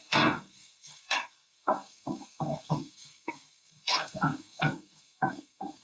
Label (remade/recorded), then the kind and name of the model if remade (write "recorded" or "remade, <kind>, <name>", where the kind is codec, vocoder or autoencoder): remade, codec, SNAC